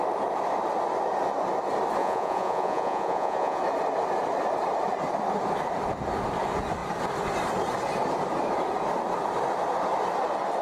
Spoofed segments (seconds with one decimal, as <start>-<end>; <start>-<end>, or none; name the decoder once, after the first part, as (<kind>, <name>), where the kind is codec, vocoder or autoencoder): 2.0-3.6 (vocoder, Vocos)